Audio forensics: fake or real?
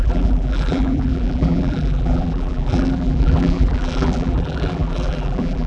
fake